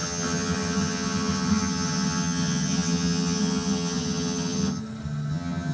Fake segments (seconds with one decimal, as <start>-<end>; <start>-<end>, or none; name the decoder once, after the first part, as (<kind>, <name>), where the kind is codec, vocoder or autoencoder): 0.0-4.8 (vocoder, HiFi-GAN); 5.3-5.7